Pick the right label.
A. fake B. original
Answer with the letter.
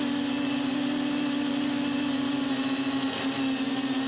B